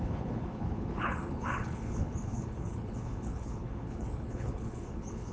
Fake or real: fake